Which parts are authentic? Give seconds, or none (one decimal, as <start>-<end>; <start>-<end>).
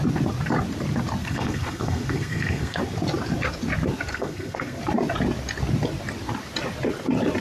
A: 0.0-1.2; 2.8-4.1; 4.8-7.4